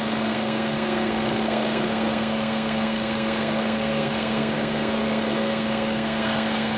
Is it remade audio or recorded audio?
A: remade